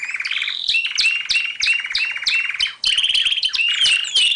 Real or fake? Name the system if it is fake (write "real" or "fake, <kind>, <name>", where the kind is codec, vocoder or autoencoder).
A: real